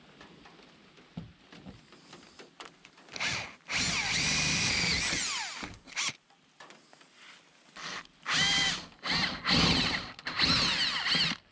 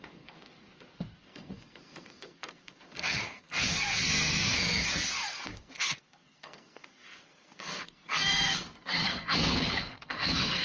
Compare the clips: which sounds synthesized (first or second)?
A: second